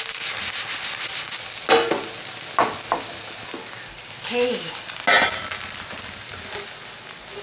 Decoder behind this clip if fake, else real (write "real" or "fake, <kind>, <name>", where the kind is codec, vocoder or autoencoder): real